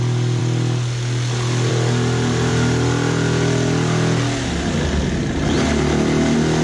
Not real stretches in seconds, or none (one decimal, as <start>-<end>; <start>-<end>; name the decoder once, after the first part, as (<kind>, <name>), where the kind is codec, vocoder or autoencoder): none